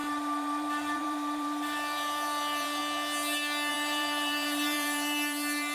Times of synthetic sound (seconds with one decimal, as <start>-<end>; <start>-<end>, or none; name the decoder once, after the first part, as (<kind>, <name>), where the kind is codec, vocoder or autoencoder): 0.0-2.8 (vocoder, BigVGAN v2); 3.7-5.7